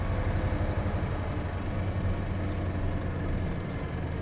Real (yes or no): yes